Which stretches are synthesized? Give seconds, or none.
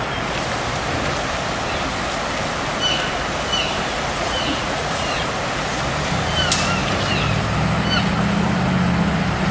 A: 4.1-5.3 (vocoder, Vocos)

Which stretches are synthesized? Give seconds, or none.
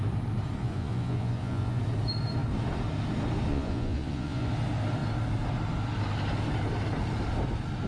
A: 0.6-1.8 (vocoder, Vocos); 3.5-4.5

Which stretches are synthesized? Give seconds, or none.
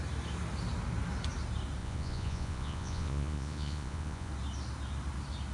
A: 1.8-4.3 (vocoder, Vocos)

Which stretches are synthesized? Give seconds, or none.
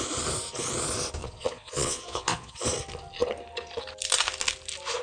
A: 1.2-2.6 (vocoder, Vocos)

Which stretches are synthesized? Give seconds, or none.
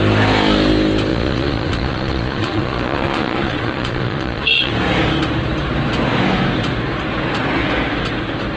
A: 1.1-4.7 (vocoder, Vocos)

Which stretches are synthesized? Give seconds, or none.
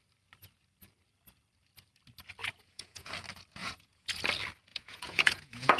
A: 2.4-3.1 (vocoder, Vocos); 3.6-4.2; 4.7-5.8